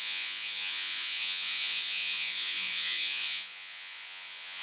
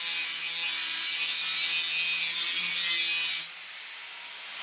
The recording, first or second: second